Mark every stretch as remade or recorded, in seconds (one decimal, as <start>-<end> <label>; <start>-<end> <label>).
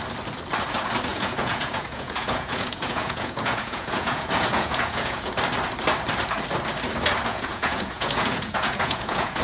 0.0-1.1 recorded; 1.1-5.3 remade; 5.3-7.3 recorded; 7.3-9.4 remade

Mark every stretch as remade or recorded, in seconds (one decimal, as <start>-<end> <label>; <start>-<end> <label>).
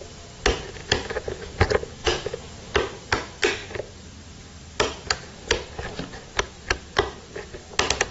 0.0-2.0 recorded; 2.0-2.5 remade; 2.5-8.1 recorded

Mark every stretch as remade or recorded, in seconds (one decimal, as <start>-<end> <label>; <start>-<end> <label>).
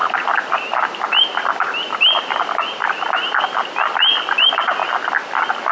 0.0-5.7 recorded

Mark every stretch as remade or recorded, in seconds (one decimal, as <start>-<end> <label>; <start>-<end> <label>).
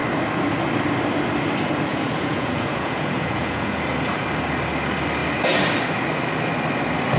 0.0-1.9 recorded; 1.9-3.8 remade; 3.8-7.2 recorded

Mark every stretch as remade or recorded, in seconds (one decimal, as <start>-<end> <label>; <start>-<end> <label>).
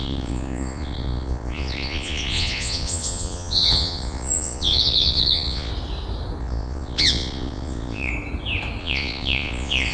0.0-5.7 remade; 5.7-6.4 recorded; 6.4-8.1 remade; 8.1-8.8 recorded; 8.8-9.9 remade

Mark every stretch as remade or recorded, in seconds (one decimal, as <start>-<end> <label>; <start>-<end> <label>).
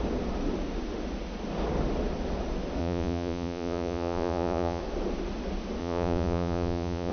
0.0-2.8 recorded; 2.8-4.8 remade; 4.8-5.8 recorded; 5.8-7.1 remade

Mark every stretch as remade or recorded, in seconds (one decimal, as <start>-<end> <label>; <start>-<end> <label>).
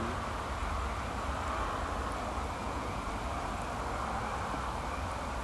0.0-2.6 recorded; 2.6-3.1 remade; 3.1-5.4 recorded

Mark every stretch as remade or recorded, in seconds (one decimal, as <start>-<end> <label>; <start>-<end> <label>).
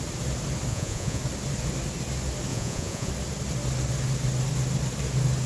0.0-0.7 recorded; 0.7-1.2 remade; 1.2-2.5 recorded; 2.5-3.1 remade; 3.1-5.5 recorded